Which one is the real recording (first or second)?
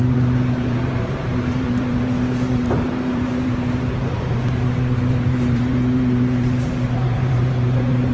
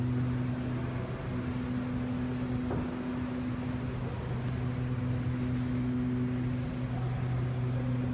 second